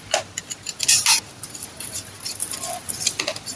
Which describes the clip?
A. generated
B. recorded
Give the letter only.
B